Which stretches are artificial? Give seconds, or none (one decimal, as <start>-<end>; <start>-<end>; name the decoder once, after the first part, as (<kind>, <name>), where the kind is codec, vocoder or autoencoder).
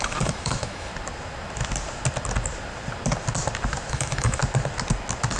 0.0-0.9 (autoencoder, DAC-VAE); 3.9-4.4